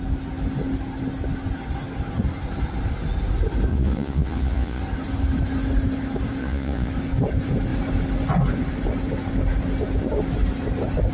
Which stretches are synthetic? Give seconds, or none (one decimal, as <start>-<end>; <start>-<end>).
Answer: 3.7-4.8; 6.4-6.9